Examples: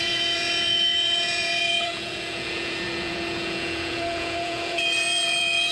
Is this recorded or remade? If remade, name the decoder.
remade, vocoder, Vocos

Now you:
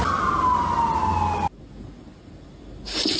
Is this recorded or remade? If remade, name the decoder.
recorded